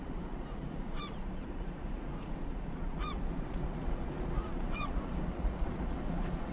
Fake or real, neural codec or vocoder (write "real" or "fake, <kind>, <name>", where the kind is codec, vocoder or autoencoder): fake, vocoder, Vocos